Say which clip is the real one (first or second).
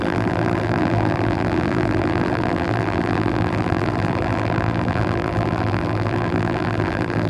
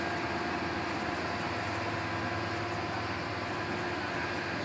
second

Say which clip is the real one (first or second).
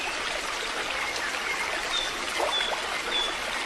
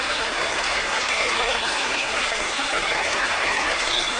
first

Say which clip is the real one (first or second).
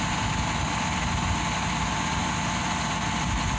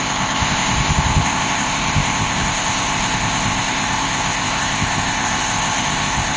first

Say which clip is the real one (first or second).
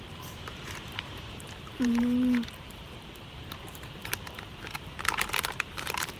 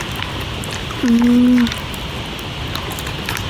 second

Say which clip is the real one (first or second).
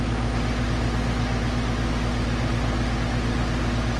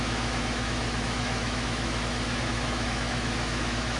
first